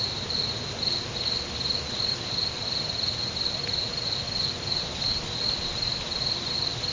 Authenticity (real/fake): real